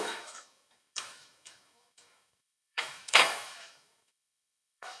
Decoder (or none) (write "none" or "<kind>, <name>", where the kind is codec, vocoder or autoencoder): autoencoder, DAC-VAE